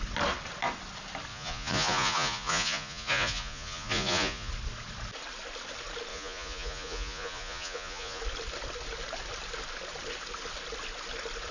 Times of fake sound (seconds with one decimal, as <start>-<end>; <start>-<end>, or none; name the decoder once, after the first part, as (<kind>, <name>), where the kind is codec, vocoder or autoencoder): 1.3-4.5 (vocoder, Vocos); 6.1-8.2